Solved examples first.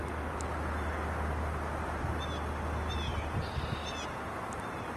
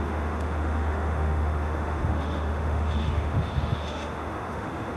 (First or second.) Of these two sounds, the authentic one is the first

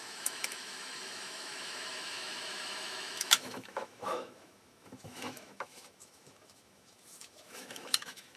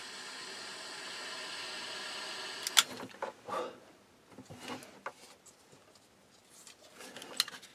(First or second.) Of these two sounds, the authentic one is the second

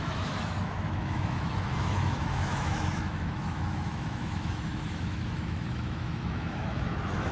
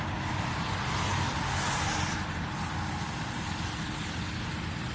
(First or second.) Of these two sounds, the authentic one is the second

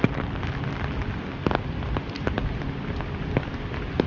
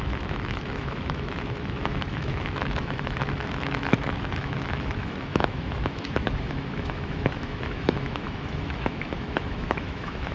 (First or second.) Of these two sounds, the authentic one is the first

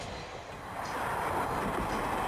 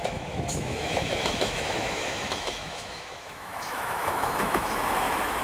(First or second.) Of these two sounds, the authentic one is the first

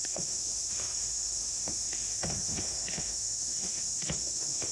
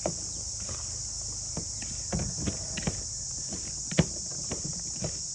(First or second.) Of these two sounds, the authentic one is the second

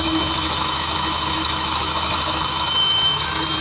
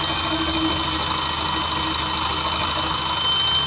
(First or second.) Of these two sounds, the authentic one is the second